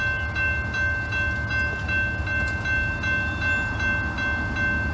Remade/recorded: recorded